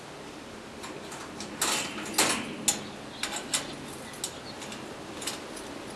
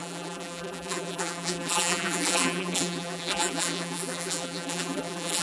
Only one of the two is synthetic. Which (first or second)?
second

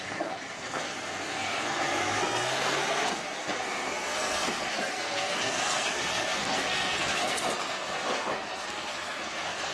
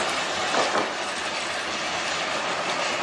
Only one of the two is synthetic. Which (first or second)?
first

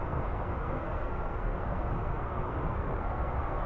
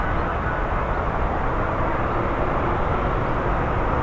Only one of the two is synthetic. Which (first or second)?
first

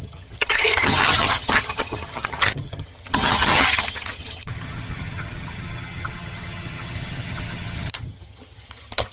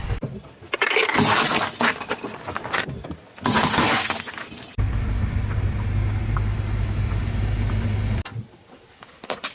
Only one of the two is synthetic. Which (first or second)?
first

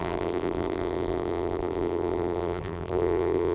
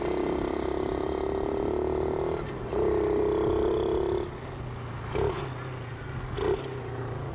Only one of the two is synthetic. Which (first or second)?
first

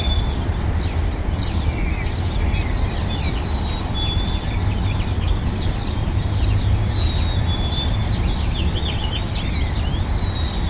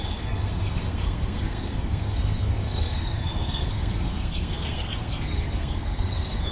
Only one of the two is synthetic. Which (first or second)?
second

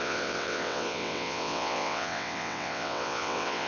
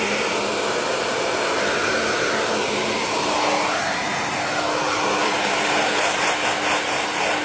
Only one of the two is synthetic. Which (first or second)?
first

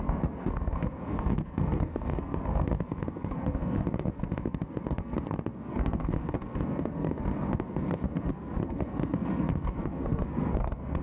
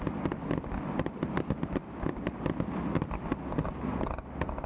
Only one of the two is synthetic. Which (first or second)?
first